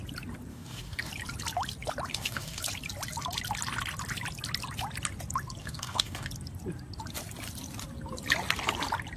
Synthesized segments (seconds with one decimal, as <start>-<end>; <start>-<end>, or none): 0.5-1.1; 2.1-2.6; 5.6-6.3